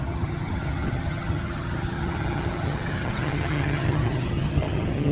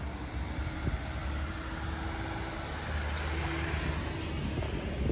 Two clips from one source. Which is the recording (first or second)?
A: second